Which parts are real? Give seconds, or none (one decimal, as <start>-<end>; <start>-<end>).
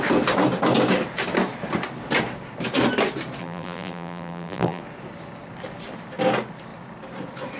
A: 0.0-3.4; 4.8-7.6